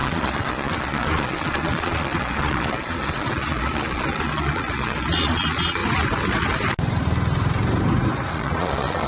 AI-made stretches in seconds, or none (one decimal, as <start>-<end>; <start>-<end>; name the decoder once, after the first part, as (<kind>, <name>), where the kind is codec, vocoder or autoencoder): 0.0-5.8 (vocoder, Vocos); 8.3-9.1